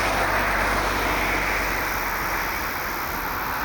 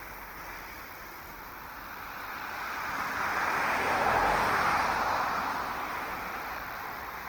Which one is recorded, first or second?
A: first